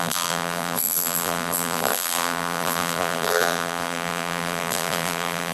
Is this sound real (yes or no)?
no